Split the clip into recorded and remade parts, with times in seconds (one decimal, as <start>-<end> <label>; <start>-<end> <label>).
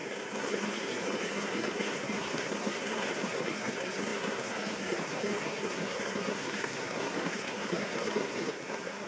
0.0-9.1 remade